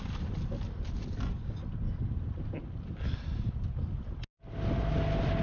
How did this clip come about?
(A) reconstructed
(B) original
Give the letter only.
B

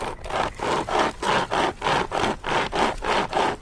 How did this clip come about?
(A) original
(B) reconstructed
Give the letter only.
A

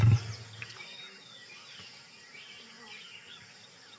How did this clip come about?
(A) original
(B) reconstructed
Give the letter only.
A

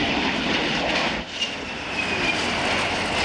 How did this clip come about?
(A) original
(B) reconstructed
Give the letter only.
A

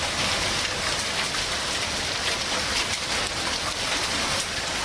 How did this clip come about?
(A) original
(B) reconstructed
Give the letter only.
A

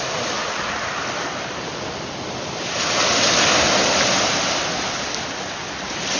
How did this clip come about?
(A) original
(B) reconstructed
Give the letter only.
A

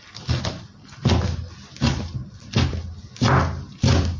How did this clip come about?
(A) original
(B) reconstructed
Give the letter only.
A